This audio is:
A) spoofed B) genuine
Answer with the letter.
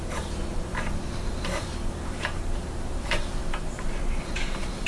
A